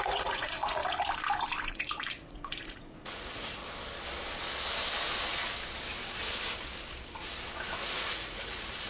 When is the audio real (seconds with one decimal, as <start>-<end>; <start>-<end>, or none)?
0.8-1.7; 3.6-7.8